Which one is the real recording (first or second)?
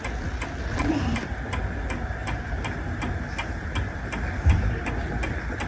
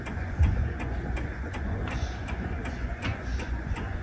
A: first